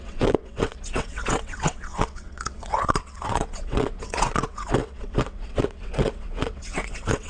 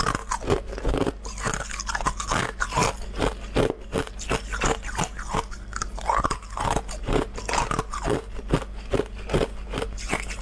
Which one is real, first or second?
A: second